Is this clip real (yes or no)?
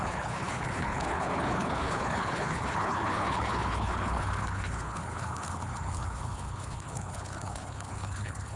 no